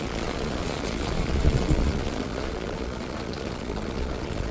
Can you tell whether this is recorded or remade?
remade